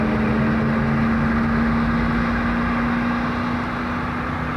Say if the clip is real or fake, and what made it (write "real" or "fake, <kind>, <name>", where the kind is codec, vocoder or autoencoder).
real